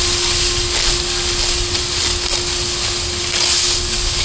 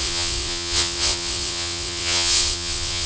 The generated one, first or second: second